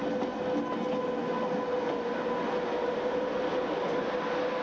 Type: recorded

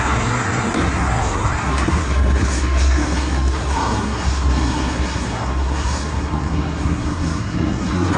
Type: remade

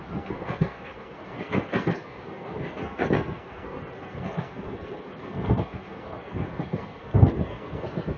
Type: remade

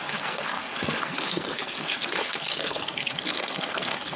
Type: remade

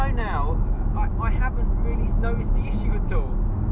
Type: recorded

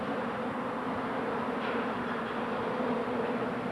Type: recorded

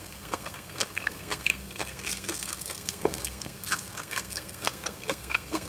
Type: remade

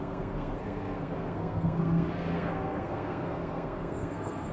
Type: remade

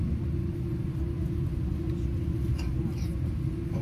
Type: recorded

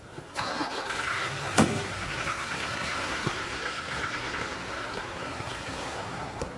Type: remade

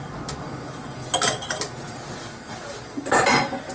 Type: recorded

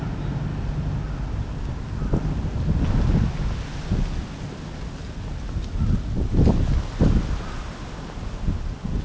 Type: recorded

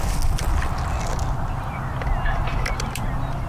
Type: recorded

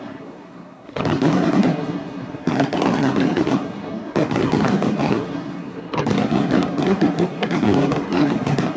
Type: remade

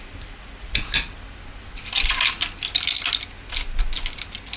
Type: recorded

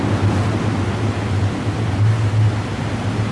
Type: recorded